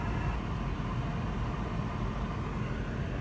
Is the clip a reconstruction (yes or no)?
no